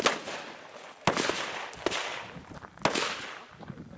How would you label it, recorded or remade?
recorded